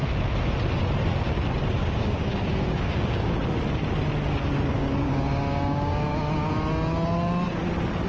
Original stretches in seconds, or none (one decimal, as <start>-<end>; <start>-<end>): 0.0-1.8; 3.4-4.8; 6.5-8.1